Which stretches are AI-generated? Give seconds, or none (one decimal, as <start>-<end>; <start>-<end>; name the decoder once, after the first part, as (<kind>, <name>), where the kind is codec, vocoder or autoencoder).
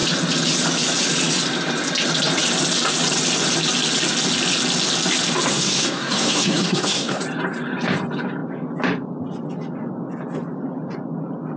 5.5-7.2 (codec, SNAC)